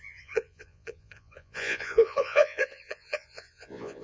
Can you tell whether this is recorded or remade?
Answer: remade